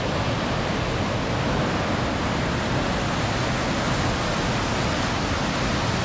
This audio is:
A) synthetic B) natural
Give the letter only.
B